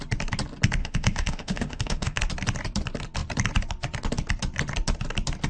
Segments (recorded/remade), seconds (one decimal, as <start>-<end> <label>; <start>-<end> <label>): 0.0-0.8 recorded; 0.8-2.2 remade; 2.2-5.5 recorded